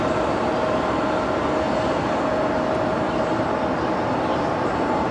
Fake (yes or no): no